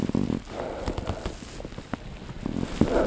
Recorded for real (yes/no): yes